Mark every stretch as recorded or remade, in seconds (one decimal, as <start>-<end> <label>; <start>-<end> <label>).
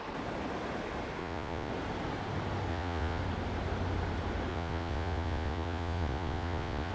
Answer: 0.0-1.2 recorded; 1.2-1.7 remade; 1.7-2.7 recorded; 2.7-3.2 remade; 3.2-4.5 recorded; 4.5-6.9 remade